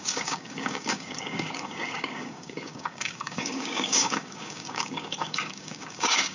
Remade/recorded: remade